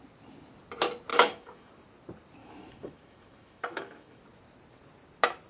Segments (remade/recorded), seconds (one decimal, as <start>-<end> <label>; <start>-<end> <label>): 0.0-1.1 recorded; 1.1-1.7 remade; 1.7-2.4 recorded; 2.4-4.2 remade; 4.2-5.5 recorded